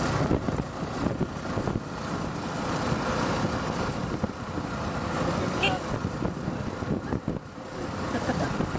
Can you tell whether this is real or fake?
real